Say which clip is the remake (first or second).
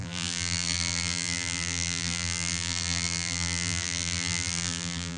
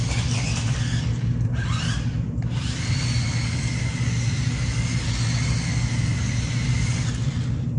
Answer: first